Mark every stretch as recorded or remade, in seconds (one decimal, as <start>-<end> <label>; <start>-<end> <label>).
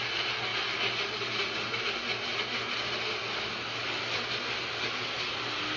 0.0-5.8 recorded